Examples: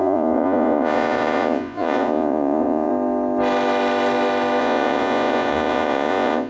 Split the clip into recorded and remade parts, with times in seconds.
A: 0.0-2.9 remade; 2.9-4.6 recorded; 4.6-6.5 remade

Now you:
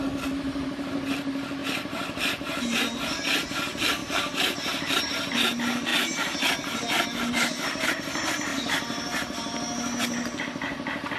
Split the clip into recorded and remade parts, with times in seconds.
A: 0.0-1.6 recorded; 1.6-2.8 remade; 2.8-4.0 recorded; 4.0-5.0 remade; 5.0-11.2 recorded

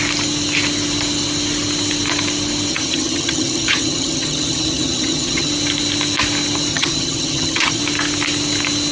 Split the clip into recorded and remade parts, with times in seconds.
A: 0.0-2.7 recorded; 2.7-5.5 remade; 5.5-6.7 recorded; 6.7-7.8 remade; 7.8-8.9 recorded